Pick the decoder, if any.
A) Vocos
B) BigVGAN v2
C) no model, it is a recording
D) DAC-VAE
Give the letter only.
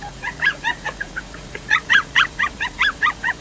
A